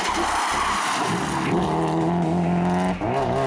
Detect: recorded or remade recorded